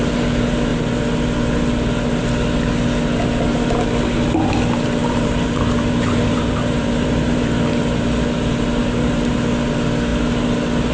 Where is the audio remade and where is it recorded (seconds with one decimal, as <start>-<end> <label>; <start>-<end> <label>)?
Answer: 0.0-5.0 recorded; 5.0-7.4 remade; 7.4-8.8 recorded; 8.8-9.3 remade; 9.3-10.9 recorded